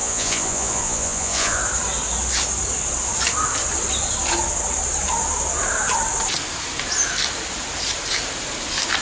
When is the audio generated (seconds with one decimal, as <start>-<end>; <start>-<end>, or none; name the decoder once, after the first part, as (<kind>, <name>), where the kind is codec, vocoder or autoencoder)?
0.0-1.6 (vocoder, Vocos)